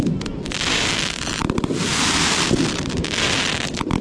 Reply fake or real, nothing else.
real